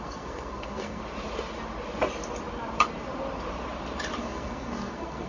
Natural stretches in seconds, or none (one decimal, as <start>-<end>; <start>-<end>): 1.0-4.2